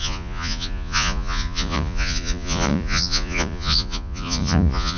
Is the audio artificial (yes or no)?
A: yes